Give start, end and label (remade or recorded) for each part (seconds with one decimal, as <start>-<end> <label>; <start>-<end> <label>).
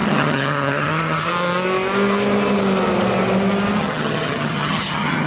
0.0-1.3 remade; 1.3-3.8 recorded; 3.8-5.3 remade